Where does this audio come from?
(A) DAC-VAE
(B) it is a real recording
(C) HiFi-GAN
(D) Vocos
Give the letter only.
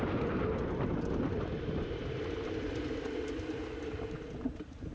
B